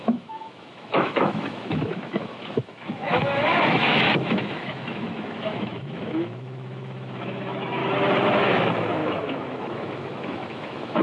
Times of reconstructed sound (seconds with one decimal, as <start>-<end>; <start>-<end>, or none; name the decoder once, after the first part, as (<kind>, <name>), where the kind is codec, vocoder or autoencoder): 0.0-7.8 (autoencoder, DAC-VAE); 8.4-11.0